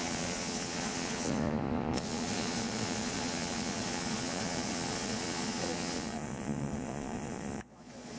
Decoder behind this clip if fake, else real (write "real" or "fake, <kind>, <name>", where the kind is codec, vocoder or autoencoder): fake, vocoder, Vocos